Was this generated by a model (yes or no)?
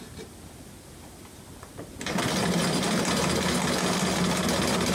no